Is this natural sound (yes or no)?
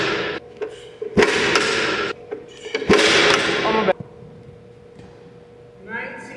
yes